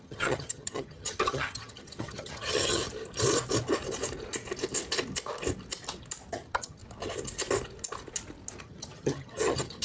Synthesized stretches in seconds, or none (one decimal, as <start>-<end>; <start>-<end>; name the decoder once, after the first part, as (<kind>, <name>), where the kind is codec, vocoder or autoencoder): 0.0-2.8 (vocoder, HiFi-GAN); 6.3-6.8; 8.6-9.8